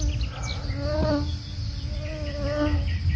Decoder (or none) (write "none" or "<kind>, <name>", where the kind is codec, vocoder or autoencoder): none